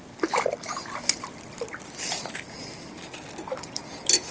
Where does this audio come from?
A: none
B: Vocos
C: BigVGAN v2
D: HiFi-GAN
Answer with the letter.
A